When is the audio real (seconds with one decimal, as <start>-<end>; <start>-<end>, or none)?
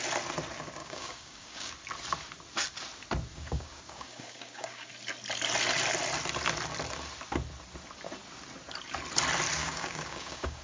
0.0-0.8; 1.7-3.3; 4.9-9.6